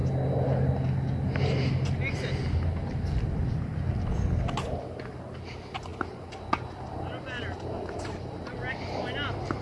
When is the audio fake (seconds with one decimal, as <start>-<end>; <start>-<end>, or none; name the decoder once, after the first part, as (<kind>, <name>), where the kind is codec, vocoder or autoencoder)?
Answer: none